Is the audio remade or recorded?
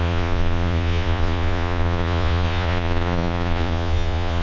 remade